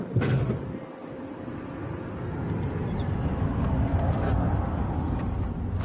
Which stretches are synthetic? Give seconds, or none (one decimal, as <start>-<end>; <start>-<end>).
none